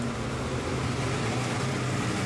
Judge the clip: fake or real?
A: real